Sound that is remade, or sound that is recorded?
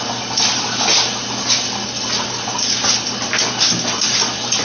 recorded